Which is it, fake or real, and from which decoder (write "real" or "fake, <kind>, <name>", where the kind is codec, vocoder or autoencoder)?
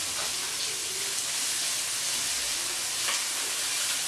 real